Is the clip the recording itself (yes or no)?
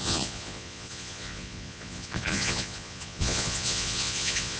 no